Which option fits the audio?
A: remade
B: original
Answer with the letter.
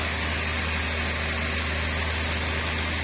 B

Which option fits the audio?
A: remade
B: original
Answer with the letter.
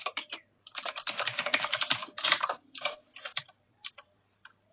A